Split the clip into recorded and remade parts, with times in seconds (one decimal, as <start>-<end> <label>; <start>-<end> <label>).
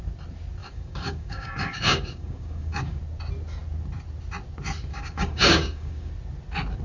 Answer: 0.0-0.6 recorded; 0.6-3.0 remade; 3.0-4.9 recorded; 4.9-6.1 remade; 6.1-6.8 recorded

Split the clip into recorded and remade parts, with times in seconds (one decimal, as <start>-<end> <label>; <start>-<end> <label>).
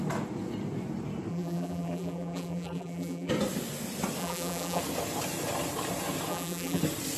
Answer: 0.0-1.3 recorded; 1.3-3.3 remade; 3.3-4.2 recorded; 4.2-4.8 remade; 4.8-6.3 recorded; 6.3-6.8 remade; 6.8-7.2 recorded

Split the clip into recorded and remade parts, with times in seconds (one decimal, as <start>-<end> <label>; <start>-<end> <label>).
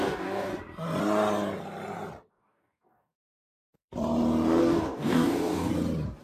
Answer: 0.0-0.5 remade; 0.5-2.3 recorded; 2.3-3.8 remade; 3.8-4.6 recorded; 4.6-5.7 remade; 5.7-6.2 recorded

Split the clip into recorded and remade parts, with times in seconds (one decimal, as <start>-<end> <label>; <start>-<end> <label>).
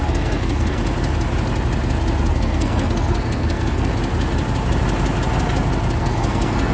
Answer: 0.0-0.8 remade; 0.8-2.3 recorded; 2.3-3.9 remade; 3.9-6.0 recorded; 6.0-6.7 remade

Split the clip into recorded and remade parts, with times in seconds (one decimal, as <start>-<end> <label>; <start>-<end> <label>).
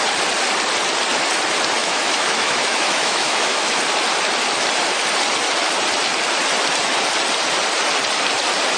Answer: 0.0-1.8 recorded; 1.8-3.8 remade; 3.8-8.8 recorded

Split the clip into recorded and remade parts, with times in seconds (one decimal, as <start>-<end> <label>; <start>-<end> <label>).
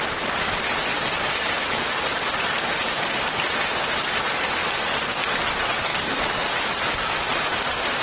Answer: 0.0-0.9 recorded; 0.9-3.1 remade; 3.1-5.9 recorded; 5.9-8.0 remade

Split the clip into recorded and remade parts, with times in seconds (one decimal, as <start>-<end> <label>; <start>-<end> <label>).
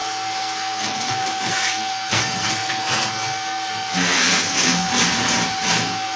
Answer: 0.0-4.9 remade; 4.9-5.7 recorded; 5.7-6.2 remade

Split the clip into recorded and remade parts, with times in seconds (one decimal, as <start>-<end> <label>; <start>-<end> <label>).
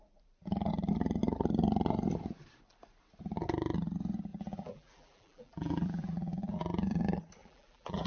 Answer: 0.0-4.3 recorded; 4.3-7.0 remade; 7.0-7.4 recorded; 7.4-8.1 remade